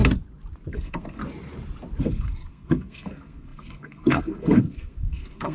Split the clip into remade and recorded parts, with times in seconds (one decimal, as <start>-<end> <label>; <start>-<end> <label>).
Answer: 0.0-0.7 recorded; 0.7-1.2 remade; 1.2-2.0 recorded; 2.0-5.5 remade